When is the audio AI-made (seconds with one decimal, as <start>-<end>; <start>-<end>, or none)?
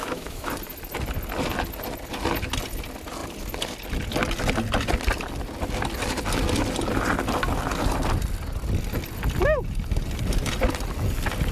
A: 0.0-0.5